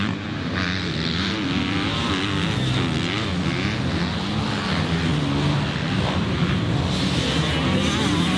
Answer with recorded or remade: recorded